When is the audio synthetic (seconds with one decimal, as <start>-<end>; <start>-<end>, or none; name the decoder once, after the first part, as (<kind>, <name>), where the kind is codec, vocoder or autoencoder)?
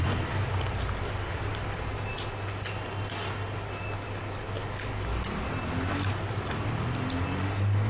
none